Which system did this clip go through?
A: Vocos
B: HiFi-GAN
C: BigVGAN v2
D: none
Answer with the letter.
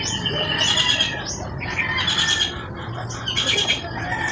D